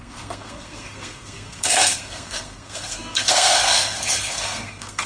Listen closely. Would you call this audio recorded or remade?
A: remade